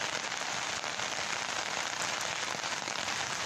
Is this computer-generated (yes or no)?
yes